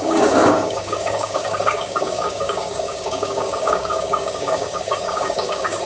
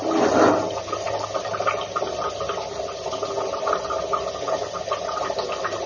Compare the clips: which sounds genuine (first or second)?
second